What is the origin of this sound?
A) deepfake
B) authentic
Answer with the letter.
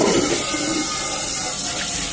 B